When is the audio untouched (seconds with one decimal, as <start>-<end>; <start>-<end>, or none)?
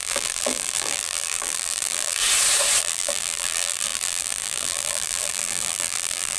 2.2-2.8